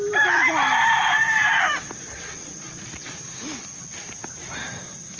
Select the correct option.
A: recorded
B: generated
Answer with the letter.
A